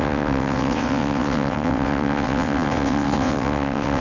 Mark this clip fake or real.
fake